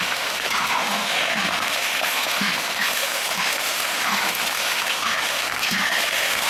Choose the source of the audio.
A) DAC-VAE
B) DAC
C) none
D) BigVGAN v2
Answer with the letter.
A